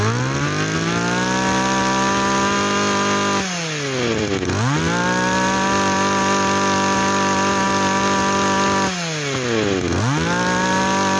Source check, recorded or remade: recorded